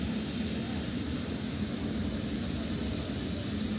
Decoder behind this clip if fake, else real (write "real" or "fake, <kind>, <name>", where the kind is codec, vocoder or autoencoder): real